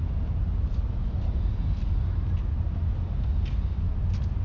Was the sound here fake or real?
real